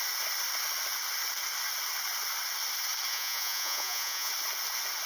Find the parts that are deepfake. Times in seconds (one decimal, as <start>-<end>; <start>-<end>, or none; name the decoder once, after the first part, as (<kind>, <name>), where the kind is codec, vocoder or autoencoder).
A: 3.1-4.3 (vocoder, Vocos)